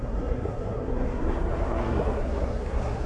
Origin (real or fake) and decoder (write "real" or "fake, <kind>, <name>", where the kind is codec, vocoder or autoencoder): fake, codec, SNAC